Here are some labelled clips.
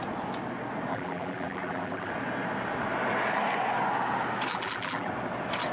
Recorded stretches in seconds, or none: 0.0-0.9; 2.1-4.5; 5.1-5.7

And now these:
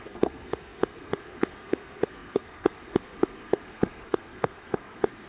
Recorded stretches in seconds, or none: none

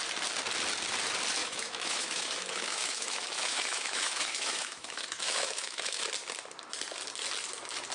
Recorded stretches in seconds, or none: 0.0-1.4; 6.0-7.9